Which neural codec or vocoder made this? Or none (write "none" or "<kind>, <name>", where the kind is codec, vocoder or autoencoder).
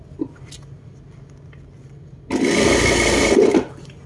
none